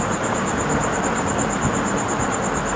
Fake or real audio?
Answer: real